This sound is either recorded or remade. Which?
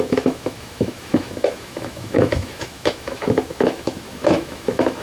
remade